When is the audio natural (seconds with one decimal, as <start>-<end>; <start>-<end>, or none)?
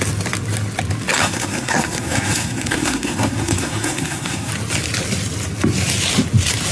0.0-1.2; 4.5-6.7